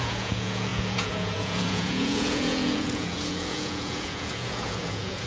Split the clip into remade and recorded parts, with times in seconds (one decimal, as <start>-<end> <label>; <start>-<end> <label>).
0.0-5.3 remade